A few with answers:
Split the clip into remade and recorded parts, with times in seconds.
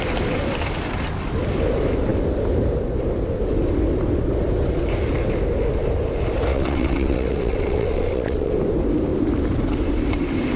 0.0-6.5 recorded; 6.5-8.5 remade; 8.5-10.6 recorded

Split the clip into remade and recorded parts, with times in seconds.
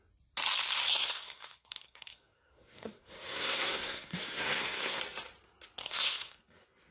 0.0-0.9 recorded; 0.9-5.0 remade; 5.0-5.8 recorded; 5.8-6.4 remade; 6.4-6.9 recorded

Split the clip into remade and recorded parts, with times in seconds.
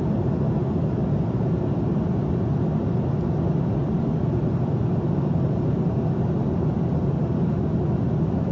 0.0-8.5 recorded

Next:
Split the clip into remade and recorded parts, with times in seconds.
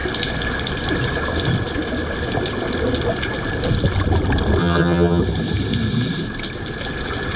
0.0-4.6 recorded; 4.6-5.2 remade; 5.2-7.4 recorded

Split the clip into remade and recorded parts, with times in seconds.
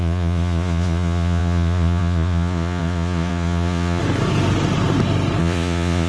0.0-4.0 remade; 4.0-5.4 recorded; 5.4-6.1 remade